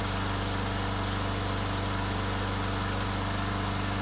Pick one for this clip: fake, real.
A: real